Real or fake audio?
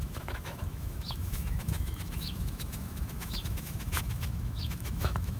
fake